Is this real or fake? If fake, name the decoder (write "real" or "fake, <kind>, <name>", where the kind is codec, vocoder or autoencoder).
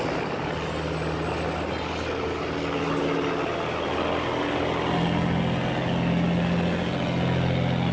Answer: real